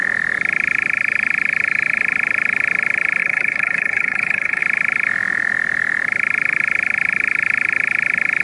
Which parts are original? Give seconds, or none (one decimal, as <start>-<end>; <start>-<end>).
0.0-3.2; 4.6-8.4